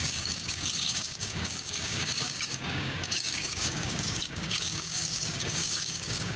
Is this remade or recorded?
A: remade